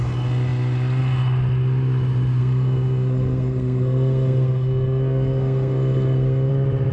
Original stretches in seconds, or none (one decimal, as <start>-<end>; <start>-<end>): 0.0-2.4; 6.5-6.9